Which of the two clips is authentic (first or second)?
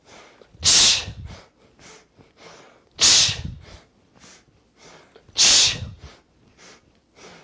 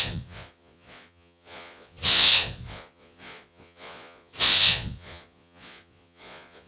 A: first